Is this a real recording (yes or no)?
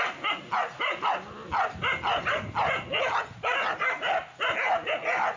yes